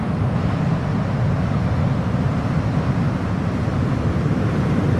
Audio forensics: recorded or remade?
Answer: recorded